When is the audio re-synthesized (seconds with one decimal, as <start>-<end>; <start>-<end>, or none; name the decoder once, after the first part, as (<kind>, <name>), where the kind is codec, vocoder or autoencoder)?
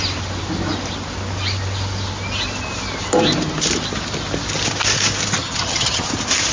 5.4-6.1 (vocoder, HiFi-GAN)